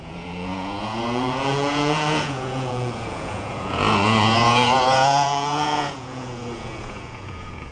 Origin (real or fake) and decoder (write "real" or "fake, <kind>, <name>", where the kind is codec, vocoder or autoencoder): fake, vocoder, Vocos